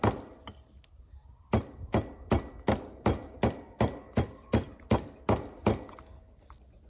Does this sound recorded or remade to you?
recorded